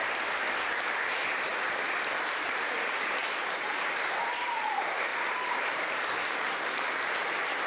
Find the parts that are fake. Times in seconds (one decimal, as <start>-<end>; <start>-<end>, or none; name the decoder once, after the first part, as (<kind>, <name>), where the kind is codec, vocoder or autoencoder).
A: 0.8-1.5 (vocoder, BigVGAN v2); 2.2-5.1; 5.7-7.7